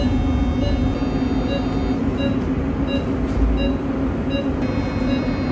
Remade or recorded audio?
recorded